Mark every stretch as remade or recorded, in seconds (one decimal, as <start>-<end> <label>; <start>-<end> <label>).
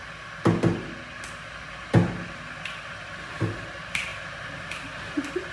0.0-3.3 recorded; 3.3-5.5 remade